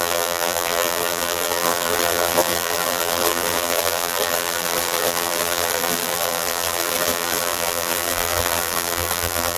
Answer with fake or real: fake